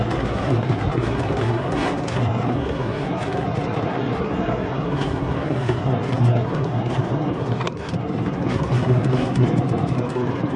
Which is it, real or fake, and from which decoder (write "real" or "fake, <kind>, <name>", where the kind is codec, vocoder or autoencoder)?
fake, codec, SNAC